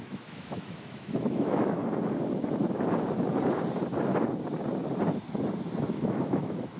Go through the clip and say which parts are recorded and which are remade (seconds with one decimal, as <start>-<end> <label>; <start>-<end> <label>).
0.0-1.8 remade; 1.8-5.9 recorded; 5.9-6.8 remade